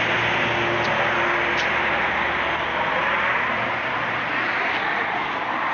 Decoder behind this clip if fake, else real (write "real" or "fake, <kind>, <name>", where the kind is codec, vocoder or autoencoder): real